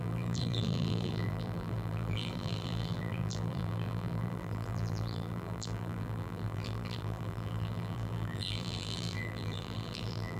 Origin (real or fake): fake